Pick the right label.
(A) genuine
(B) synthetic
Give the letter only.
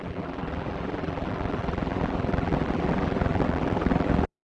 B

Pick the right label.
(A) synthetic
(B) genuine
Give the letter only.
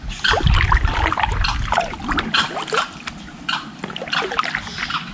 A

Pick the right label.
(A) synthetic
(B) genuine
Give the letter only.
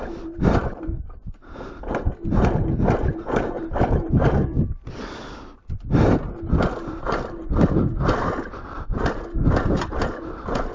A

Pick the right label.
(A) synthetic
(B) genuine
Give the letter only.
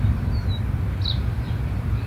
B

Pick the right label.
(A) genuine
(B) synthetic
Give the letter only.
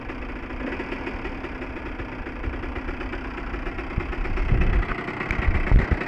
A